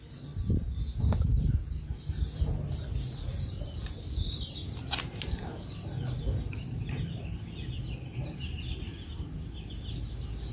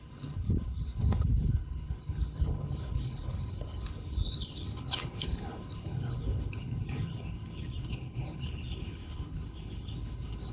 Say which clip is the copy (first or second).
second